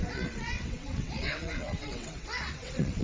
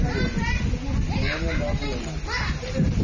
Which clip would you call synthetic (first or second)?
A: first